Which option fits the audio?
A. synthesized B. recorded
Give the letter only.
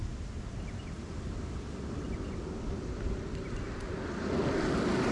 B